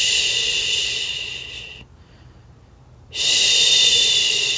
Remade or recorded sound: remade